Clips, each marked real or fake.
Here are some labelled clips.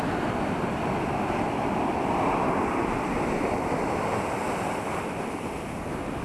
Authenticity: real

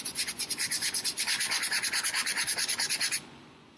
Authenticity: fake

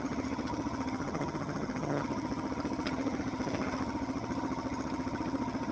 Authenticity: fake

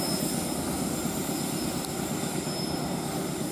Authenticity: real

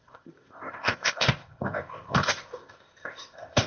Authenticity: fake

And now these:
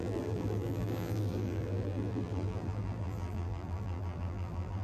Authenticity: fake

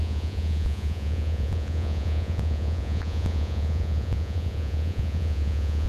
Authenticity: fake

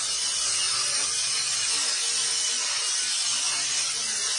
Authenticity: real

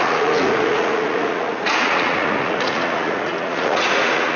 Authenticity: fake